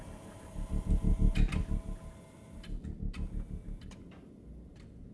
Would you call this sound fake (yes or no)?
no